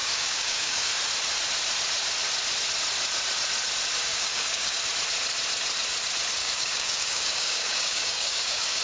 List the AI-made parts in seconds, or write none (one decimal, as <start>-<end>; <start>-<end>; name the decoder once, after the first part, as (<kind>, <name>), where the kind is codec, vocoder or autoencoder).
0.0-0.9 (codec, DAC); 4.1-4.8; 6.4-8.8